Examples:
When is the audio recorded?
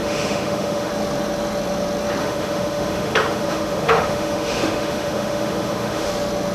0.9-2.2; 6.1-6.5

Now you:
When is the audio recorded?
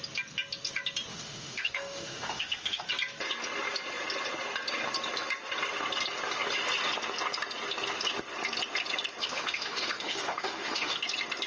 0.0-1.1; 2.8-9.2; 11.0-11.5